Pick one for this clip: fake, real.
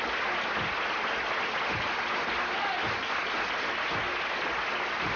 real